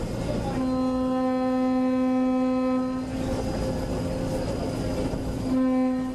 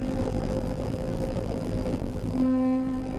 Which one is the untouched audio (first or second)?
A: first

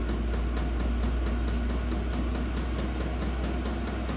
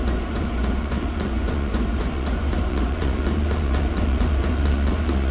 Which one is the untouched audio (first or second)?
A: first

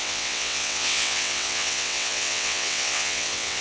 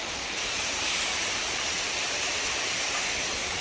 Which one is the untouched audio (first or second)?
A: second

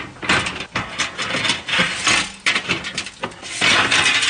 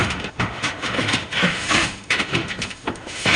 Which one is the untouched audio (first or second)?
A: first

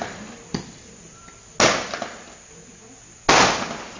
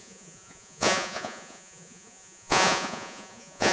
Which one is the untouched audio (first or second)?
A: first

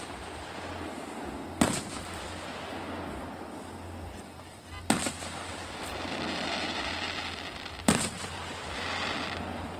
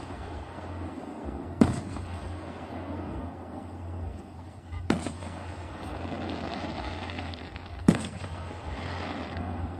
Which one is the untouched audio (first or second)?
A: first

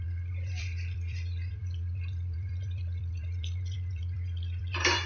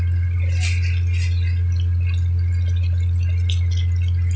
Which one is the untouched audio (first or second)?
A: second